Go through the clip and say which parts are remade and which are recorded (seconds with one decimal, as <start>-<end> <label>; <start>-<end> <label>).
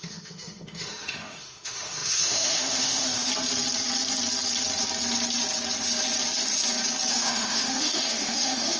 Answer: 0.0-3.3 remade; 3.3-7.1 recorded; 7.1-8.8 remade